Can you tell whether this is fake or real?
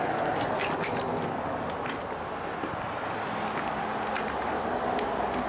real